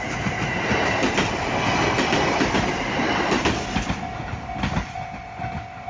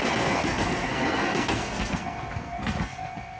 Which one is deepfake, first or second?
second